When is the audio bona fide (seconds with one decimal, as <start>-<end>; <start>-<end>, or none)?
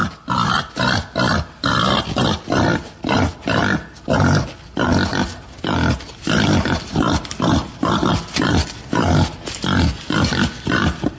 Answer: 0.0-11.2